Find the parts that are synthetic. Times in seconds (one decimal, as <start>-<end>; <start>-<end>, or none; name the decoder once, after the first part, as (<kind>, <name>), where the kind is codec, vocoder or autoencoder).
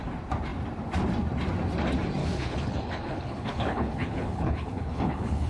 2.2-5.5 (codec, HILCodec)